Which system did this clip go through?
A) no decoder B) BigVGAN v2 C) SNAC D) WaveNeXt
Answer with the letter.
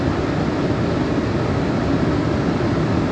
A